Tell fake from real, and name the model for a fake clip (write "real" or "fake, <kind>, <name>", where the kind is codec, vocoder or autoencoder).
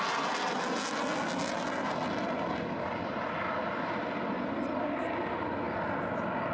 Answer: real